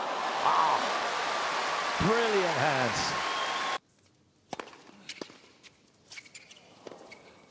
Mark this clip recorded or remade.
recorded